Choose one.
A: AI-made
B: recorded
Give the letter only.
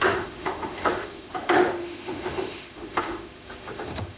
A